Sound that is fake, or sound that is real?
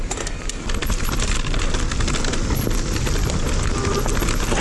real